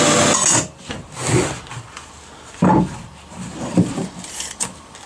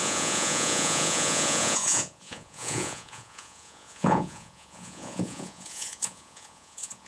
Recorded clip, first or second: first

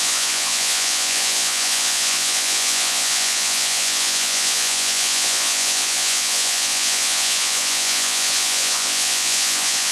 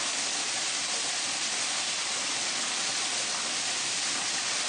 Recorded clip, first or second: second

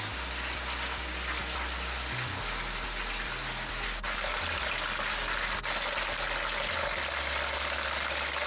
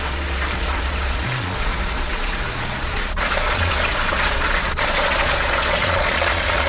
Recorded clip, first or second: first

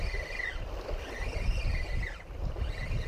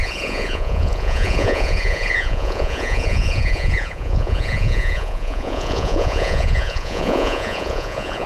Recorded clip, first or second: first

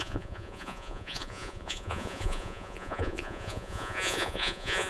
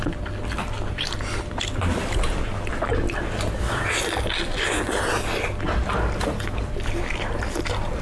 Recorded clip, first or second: second